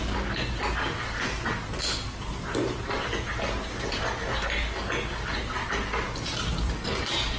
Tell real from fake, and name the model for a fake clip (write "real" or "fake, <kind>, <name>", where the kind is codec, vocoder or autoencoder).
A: real